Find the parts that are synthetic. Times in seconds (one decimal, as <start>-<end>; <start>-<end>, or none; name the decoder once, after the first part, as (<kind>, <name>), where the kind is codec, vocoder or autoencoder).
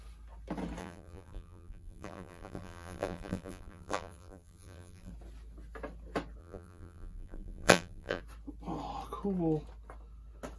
0.8-5.1 (vocoder, BigVGAN v2); 6.4-8.2